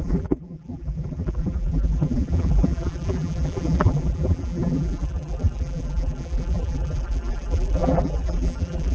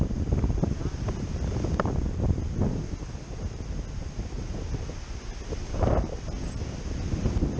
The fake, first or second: first